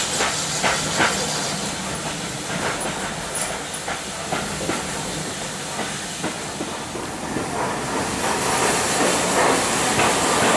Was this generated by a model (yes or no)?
no